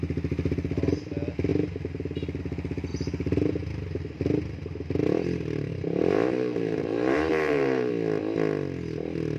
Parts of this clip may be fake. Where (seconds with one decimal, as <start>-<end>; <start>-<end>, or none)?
2.9-3.5; 5.7-7.9